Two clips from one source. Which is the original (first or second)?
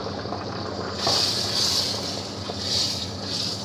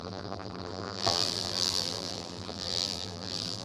first